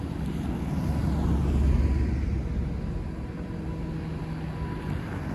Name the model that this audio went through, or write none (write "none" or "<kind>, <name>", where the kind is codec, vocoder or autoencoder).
none